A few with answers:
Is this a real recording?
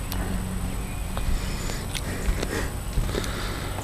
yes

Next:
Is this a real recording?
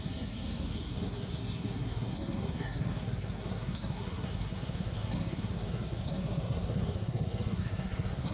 no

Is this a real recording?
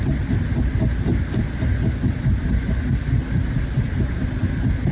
yes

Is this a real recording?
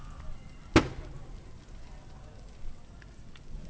yes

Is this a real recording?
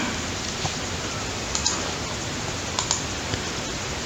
no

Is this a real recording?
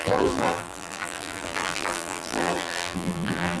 no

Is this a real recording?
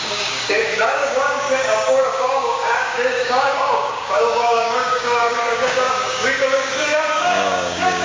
no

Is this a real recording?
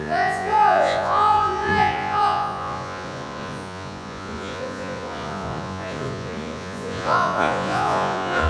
no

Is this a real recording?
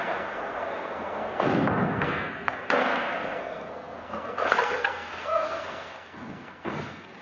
no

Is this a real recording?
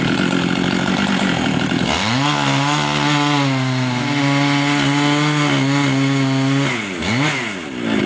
yes